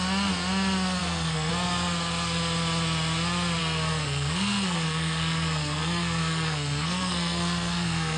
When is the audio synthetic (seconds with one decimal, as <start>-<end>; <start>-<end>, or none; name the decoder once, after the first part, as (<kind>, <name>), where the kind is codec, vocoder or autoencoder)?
1.0-1.5 (codec, SNAC); 3.6-8.2